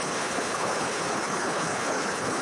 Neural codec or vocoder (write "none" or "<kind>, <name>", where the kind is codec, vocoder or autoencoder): codec, HILCodec